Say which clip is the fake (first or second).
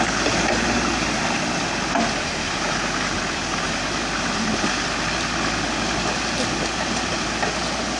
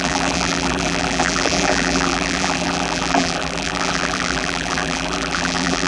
second